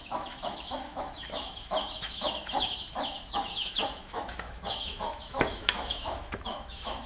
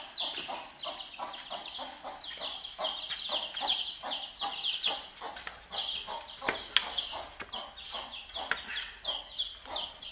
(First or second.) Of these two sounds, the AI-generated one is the first